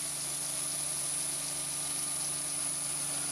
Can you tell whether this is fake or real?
real